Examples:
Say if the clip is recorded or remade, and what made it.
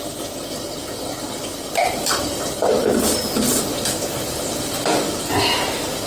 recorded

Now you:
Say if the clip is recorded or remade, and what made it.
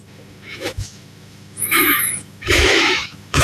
remade, autoencoder, DAC-VAE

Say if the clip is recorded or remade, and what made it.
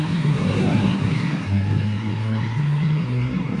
remade, codec, SNAC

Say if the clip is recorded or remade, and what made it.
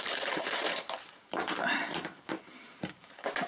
remade, vocoder, BigVGAN v2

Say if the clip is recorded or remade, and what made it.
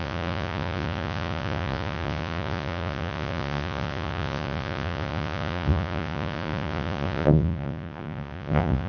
remade, vocoder, Vocos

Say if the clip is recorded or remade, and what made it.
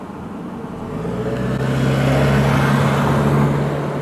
recorded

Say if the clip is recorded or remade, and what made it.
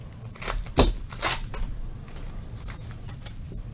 recorded